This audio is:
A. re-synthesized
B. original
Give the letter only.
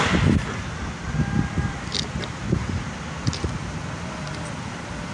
A